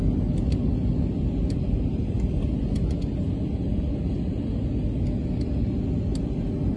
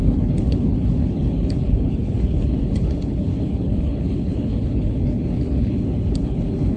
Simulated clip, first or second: second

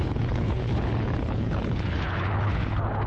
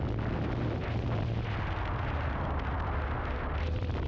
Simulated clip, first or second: first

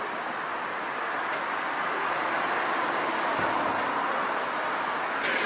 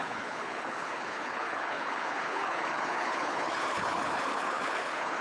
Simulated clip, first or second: second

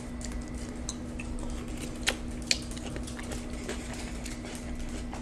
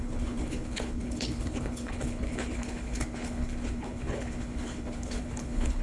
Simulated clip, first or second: second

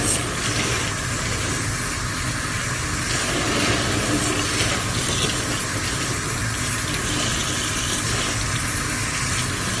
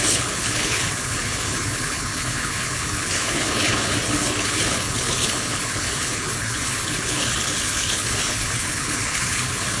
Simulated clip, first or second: second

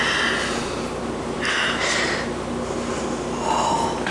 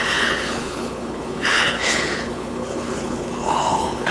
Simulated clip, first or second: second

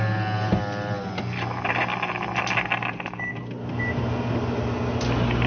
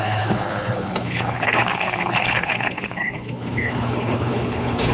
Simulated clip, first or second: second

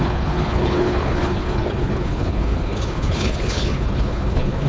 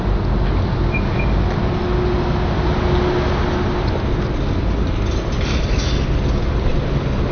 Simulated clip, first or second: first